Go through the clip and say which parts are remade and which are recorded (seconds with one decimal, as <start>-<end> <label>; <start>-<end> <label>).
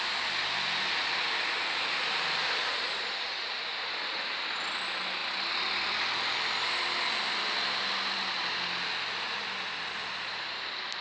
0.0-11.0 recorded